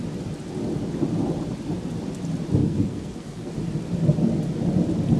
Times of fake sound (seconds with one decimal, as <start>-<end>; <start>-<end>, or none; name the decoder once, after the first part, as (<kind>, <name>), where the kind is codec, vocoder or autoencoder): 2.6-3.5 (codec, SNAC)